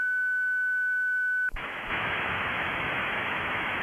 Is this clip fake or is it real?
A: fake